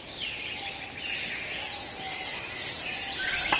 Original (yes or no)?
yes